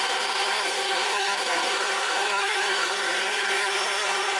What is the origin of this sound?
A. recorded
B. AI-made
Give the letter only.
B